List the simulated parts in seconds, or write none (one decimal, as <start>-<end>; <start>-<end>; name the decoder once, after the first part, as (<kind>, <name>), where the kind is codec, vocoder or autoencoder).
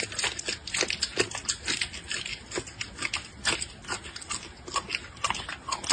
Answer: none